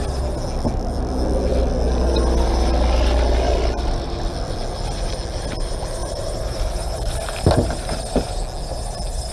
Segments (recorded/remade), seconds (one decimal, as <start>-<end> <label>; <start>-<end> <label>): 0.0-6.0 recorded; 6.0-7.1 remade; 7.1-9.3 recorded